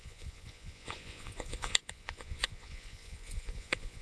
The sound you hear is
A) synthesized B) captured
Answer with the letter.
A